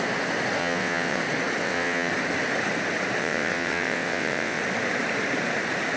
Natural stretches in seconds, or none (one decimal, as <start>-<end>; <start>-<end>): 0.0-0.6; 1.2-1.6; 2.1-3.2; 4.6-6.0